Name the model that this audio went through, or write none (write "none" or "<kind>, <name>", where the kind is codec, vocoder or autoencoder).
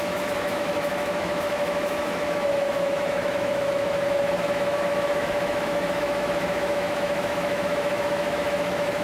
autoencoder, DAC-VAE